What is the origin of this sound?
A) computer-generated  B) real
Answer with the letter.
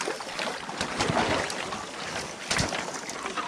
B